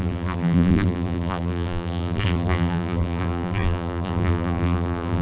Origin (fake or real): fake